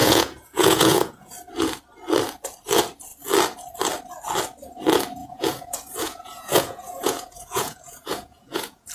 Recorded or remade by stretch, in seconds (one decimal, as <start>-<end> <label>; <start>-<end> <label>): 0.0-1.3 remade; 1.3-5.2 recorded; 5.2-8.9 remade

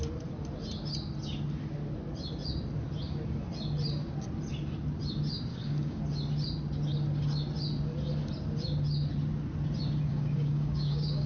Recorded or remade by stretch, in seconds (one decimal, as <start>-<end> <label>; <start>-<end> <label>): 0.0-5.5 recorded; 5.5-6.0 remade; 6.0-10.1 recorded; 10.1-11.3 remade

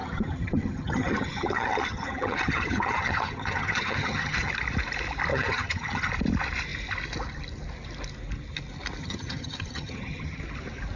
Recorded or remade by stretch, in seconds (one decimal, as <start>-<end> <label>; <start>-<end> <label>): 0.0-4.5 remade; 4.5-5.3 recorded; 5.3-6.1 remade; 6.1-9.0 recorded; 9.0-10.4 remade; 10.4-11.0 recorded

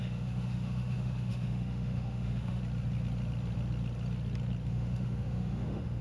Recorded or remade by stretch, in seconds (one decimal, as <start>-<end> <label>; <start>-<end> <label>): 0.0-2.6 remade; 2.6-4.7 recorded; 4.7-6.0 remade